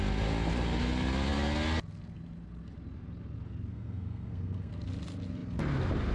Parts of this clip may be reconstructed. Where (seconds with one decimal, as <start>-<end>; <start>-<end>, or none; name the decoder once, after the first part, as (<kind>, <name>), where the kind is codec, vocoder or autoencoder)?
3.7-4.7 (codec, SNAC)